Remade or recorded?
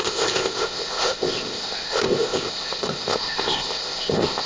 remade